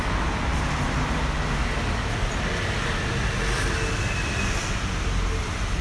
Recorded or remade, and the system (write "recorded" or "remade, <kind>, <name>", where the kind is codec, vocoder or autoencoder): recorded